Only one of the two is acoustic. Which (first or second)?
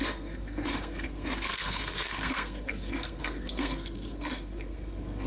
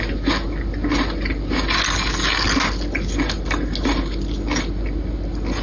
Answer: second